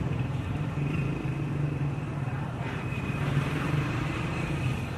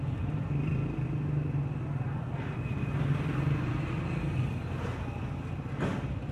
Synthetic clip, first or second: first